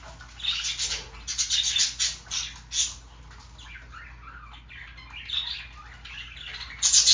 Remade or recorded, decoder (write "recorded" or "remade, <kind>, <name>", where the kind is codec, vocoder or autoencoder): recorded